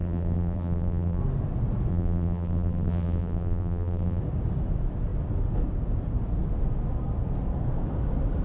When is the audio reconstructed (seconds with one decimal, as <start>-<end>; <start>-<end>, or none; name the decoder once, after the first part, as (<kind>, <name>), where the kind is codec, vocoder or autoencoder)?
0.0-1.2 (vocoder, BigVGAN v2); 1.9-4.2